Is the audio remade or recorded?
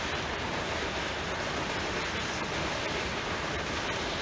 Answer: recorded